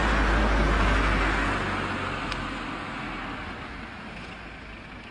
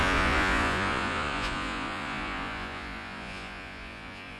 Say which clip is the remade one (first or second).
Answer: second